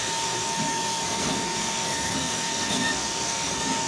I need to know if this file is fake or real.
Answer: fake